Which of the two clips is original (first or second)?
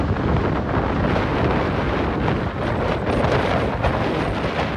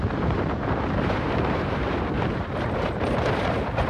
first